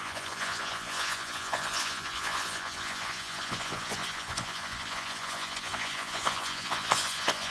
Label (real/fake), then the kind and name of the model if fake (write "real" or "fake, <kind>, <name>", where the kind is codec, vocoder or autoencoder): fake, vocoder, Vocos